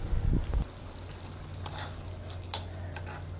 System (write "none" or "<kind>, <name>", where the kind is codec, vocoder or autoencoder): none